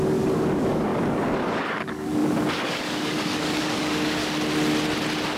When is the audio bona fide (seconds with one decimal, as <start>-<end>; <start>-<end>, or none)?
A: 4.2-5.4